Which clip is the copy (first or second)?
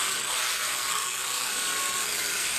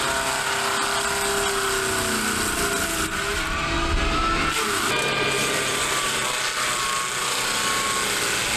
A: first